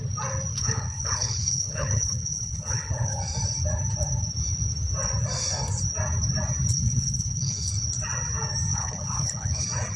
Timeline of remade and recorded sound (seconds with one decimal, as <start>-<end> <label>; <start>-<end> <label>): 0.0-0.5 recorded; 0.5-3.2 remade; 3.2-6.7 recorded; 6.7-7.7 remade; 7.7-8.7 recorded; 8.7-9.6 remade; 9.6-10.0 recorded